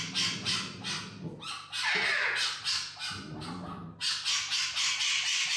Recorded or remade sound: recorded